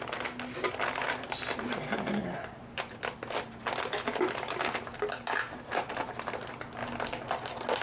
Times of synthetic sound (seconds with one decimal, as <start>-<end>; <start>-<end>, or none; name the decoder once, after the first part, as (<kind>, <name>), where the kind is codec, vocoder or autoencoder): none